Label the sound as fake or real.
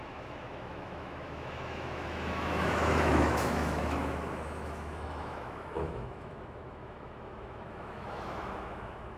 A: fake